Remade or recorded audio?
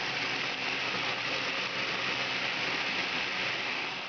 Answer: recorded